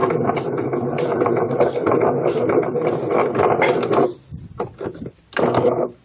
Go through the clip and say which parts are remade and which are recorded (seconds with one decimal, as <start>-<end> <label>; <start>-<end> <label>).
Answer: 0.0-6.0 remade